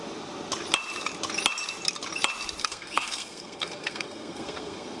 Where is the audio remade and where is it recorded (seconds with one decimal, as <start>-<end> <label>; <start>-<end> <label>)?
0.0-2.6 recorded; 2.6-5.0 remade